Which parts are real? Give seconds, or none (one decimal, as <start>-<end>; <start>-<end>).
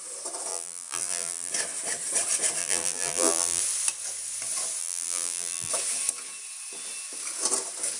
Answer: 0.0-0.5; 1.5-2.6; 3.6-4.8; 5.7-8.0